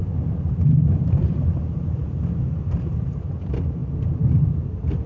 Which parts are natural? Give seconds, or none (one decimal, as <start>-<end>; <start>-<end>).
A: 2.0-2.8